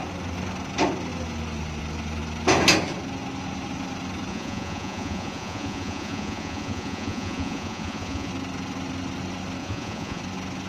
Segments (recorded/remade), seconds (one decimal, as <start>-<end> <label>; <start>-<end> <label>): 0.0-4.3 recorded; 4.3-8.3 remade; 8.3-9.6 recorded; 9.6-10.2 remade; 10.2-10.7 recorded